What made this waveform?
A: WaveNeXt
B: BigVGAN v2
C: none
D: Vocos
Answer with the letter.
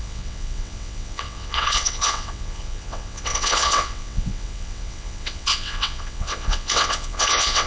A